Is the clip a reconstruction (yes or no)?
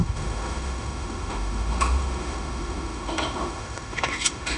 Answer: yes